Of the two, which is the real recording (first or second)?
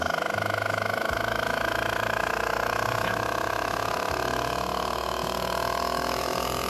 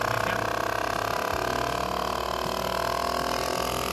second